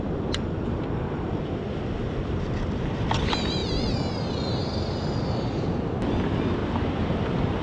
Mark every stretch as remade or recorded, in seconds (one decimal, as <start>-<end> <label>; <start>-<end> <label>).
0.0-7.6 recorded